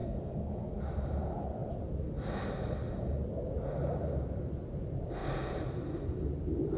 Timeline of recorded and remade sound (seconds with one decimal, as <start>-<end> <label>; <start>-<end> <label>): 0.0-0.8 remade; 0.8-6.8 recorded